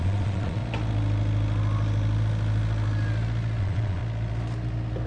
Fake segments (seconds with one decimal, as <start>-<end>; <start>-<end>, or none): 0.0-0.6; 3.6-4.0

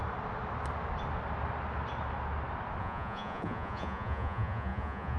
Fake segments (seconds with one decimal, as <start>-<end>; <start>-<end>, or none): 2.8-5.2

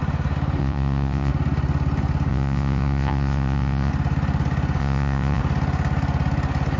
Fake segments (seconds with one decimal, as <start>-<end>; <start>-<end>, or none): 0.6-1.3; 2.3-3.9; 4.8-5.4

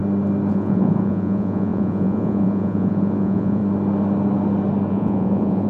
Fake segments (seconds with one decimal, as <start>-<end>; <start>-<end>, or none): 0.5-3.6; 4.9-5.7

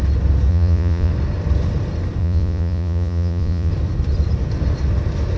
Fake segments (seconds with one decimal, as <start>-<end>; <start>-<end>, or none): 0.5-1.1; 2.2-3.7